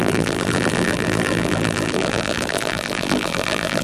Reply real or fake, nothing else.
fake